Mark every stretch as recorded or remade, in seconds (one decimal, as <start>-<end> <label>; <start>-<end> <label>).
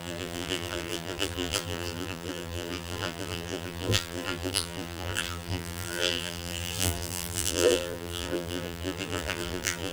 0.0-9.9 remade